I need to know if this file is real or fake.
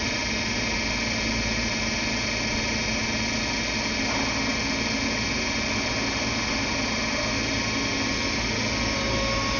real